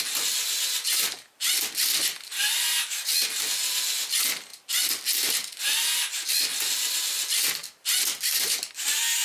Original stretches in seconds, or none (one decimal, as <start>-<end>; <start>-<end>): 0.0-9.2